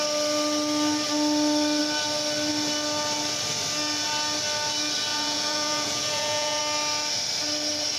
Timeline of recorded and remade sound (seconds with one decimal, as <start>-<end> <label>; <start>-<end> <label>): 0.0-5.1 recorded; 5.1-6.6 remade; 6.6-8.0 recorded